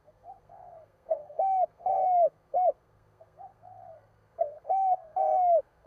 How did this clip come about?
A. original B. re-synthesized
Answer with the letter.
B